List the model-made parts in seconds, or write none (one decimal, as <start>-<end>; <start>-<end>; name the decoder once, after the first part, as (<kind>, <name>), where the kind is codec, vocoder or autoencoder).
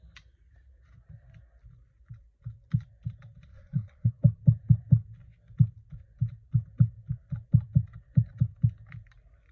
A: 3.5-4.1 (codec, SNAC)